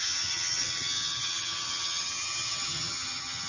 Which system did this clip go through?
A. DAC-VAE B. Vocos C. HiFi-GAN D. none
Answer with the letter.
C